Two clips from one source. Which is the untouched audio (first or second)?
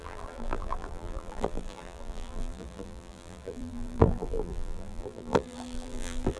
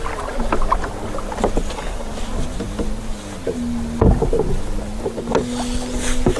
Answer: second